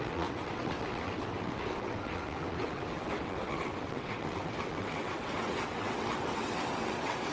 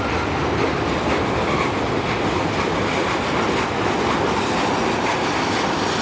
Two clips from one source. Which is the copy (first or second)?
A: first